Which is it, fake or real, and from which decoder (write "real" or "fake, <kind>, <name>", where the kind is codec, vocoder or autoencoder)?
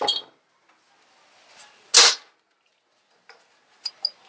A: real